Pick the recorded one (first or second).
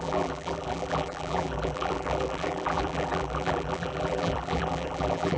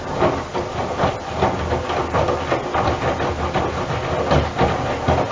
second